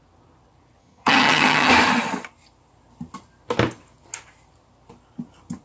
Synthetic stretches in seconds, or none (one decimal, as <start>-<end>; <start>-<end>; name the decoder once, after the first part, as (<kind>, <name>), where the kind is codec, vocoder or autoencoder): 0.8-1.7 (vocoder, HiFi-GAN)

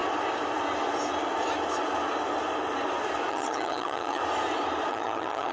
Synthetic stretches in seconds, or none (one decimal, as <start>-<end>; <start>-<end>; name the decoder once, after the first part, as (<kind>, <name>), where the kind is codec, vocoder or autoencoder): 3.3-4.2 (vocoder, HiFi-GAN); 4.9-5.5